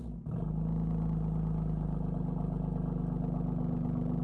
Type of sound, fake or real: real